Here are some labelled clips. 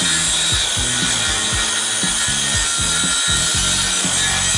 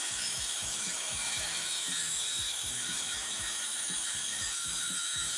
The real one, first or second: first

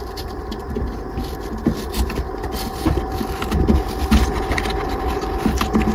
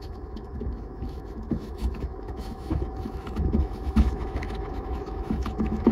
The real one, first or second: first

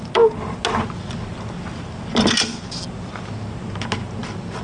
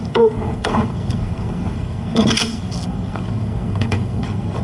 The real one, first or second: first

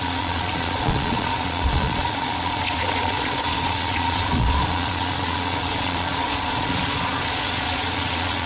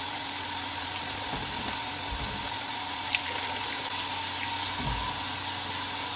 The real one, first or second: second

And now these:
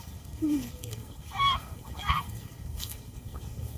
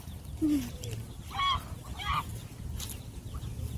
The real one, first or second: second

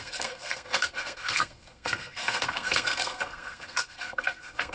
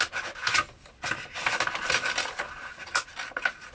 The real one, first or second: second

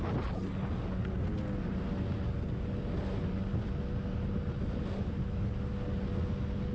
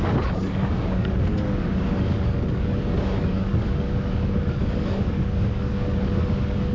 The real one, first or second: first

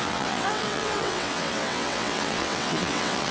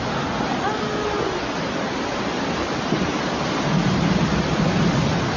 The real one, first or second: second